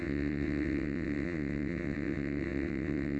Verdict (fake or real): fake